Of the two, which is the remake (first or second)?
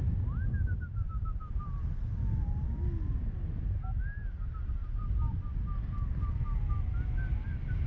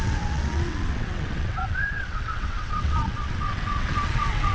second